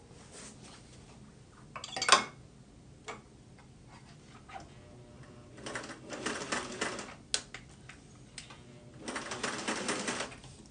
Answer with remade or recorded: recorded